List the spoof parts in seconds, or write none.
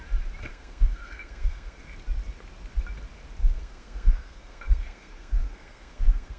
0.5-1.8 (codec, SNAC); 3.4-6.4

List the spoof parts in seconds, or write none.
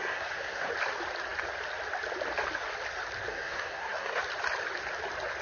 0.0-0.7 (codec, SNAC); 3.3-4.2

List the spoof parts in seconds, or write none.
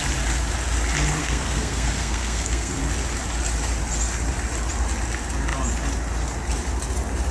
1.2-2.8 (codec, SNAC)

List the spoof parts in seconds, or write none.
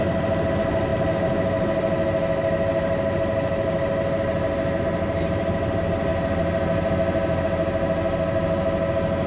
none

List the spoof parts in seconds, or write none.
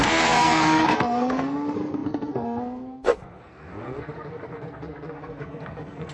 0.0-6.1 (codec, SNAC)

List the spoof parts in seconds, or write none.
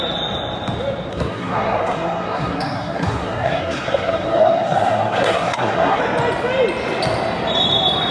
1.1-6.0 (codec, SNAC)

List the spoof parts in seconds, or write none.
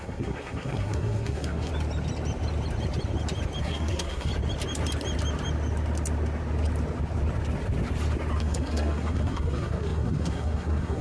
0.0-1.7 (codec, SNAC); 3.6-4.3; 8.4-11.0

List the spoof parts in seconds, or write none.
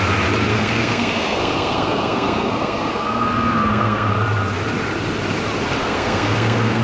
0.5-4.1 (codec, SNAC); 5.8-6.8